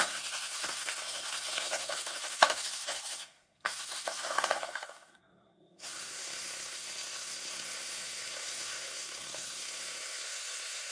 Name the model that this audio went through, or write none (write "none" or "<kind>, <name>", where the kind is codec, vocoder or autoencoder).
codec, SNAC